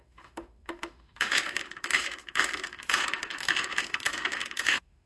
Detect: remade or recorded remade